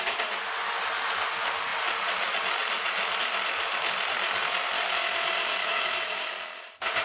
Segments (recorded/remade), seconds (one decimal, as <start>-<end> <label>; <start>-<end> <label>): 0.0-5.6 recorded; 5.6-6.3 remade; 6.3-7.0 recorded